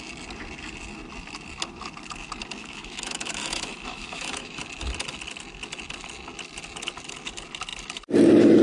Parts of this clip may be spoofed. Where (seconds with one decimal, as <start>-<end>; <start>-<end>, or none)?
2.6-4.6

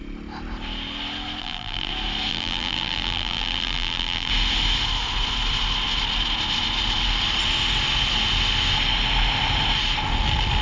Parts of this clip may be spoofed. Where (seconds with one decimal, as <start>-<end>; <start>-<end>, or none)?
1.4-1.9; 2.3-4.3

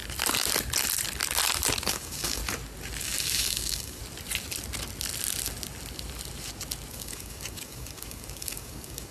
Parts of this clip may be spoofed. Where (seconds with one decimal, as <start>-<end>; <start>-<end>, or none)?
1.9-2.4; 3.0-4.0; 6.9-9.1

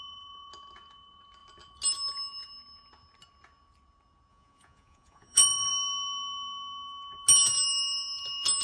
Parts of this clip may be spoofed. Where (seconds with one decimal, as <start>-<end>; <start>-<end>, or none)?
4.3-5.7

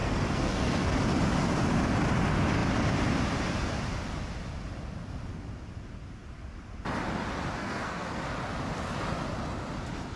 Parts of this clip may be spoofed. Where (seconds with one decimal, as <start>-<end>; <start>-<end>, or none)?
0.0-1.0; 7.6-8.2